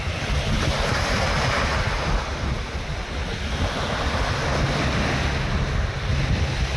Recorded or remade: recorded